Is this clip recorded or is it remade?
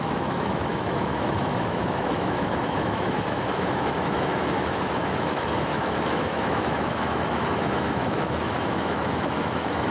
remade